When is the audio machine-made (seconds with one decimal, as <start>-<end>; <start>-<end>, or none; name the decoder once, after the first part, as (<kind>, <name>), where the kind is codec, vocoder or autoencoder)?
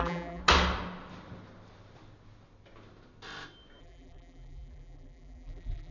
0.0-0.4 (vocoder, BigVGAN v2); 3.8-5.9